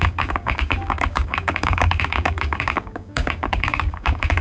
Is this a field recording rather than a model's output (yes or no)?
no